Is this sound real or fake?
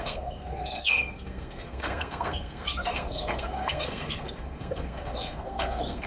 fake